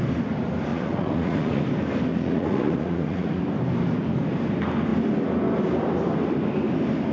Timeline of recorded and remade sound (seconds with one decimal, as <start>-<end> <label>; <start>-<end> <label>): 0.0-0.7 recorded; 0.7-1.6 remade; 1.6-2.1 recorded; 2.1-3.4 remade; 3.4-7.1 recorded